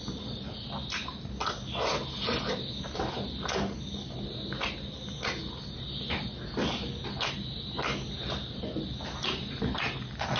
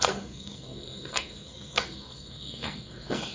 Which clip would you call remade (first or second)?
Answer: second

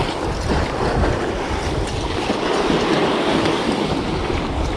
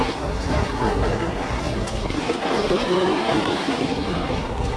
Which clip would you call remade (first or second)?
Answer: second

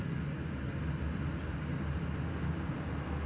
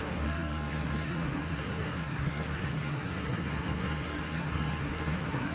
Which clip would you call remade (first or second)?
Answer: second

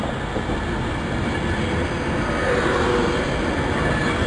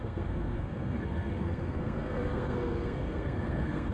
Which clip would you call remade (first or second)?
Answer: second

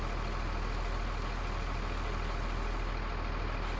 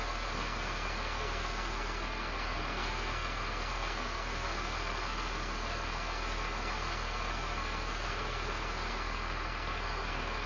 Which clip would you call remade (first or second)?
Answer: second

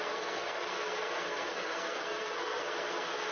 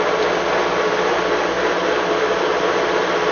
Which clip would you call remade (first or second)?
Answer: first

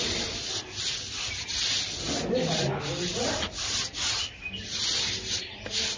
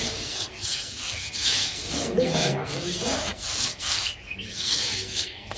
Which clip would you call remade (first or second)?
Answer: second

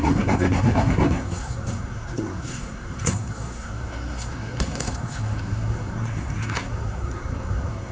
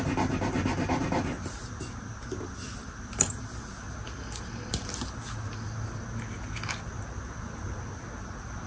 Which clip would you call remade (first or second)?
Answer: first